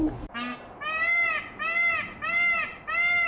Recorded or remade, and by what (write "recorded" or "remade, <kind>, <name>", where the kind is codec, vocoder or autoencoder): recorded